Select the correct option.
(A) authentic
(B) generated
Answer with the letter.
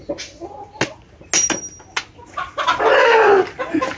A